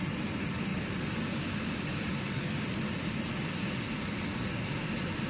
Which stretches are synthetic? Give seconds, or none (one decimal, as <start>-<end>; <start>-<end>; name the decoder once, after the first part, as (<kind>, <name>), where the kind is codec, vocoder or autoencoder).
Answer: none